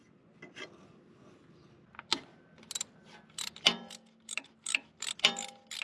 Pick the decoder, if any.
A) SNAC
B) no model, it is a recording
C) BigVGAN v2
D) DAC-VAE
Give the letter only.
B